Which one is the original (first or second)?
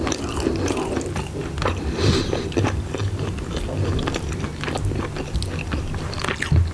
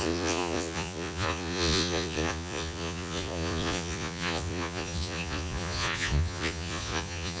first